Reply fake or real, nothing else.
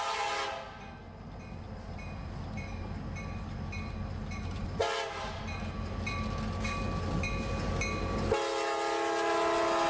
real